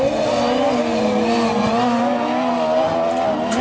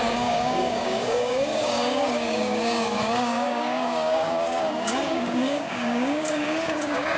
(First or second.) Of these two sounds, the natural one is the first